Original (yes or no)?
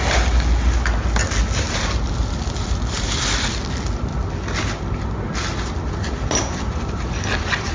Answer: yes